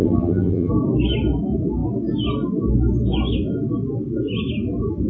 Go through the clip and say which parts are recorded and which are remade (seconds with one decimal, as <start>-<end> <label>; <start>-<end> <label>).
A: 0.0-0.7 remade; 0.7-5.1 recorded